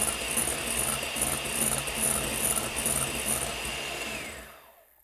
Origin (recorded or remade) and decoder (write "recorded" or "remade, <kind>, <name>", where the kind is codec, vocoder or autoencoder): recorded